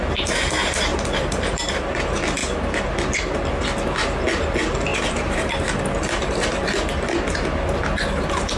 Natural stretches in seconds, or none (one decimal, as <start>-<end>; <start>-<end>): 0.0-0.9; 1.6-2.4; 2.9-4.9; 5.8-8.6

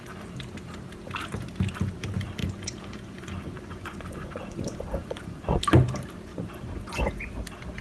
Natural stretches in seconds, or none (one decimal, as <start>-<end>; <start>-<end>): 0.0-2.4; 5.6-6.3; 7.3-7.8

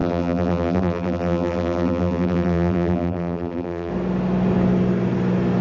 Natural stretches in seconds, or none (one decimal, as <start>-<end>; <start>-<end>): 3.9-5.6

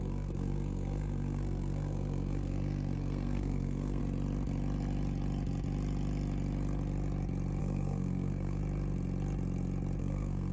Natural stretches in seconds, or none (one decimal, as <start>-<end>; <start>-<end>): 4.0-7.6; 8.6-10.0

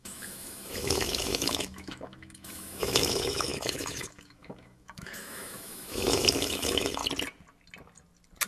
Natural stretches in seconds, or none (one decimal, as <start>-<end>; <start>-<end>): 7.0-8.5

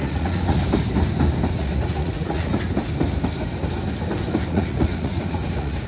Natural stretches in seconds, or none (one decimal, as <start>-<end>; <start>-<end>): 0.6-1.5; 2.5-4.5

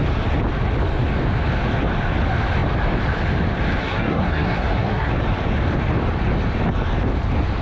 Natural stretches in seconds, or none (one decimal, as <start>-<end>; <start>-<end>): 0.0-3.8; 5.1-7.6